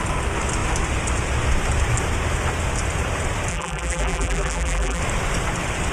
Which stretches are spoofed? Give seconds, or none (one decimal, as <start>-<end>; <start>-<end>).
3.5-5.0